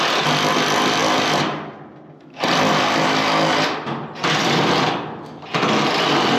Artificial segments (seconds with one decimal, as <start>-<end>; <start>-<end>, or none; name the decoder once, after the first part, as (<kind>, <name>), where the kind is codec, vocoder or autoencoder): none